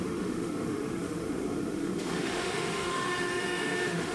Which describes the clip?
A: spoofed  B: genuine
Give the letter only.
A